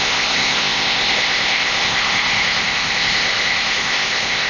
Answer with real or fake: fake